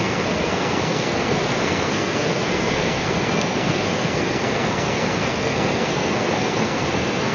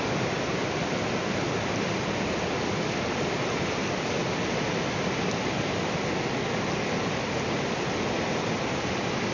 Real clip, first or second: second